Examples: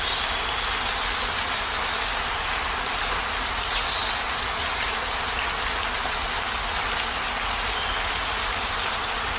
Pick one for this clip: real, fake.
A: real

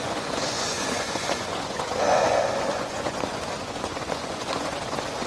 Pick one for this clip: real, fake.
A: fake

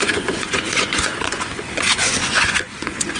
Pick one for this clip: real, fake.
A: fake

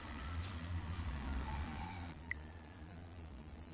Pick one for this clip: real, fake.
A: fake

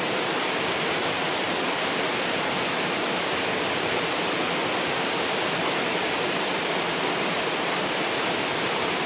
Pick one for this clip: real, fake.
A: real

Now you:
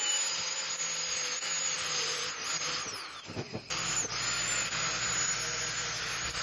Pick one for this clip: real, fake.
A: real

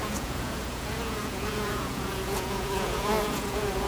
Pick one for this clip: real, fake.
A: fake